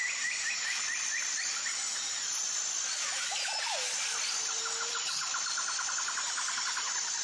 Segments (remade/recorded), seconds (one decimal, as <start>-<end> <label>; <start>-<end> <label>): 0.0-2.4 remade; 2.4-4.9 recorded; 4.9-7.2 remade